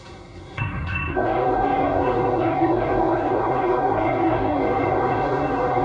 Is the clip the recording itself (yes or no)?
no